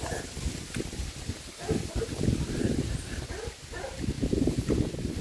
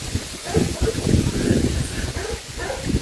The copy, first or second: second